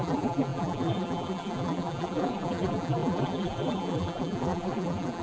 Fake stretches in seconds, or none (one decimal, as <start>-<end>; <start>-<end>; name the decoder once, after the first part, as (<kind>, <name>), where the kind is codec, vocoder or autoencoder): 0.0-5.2 (vocoder, BigVGAN v2)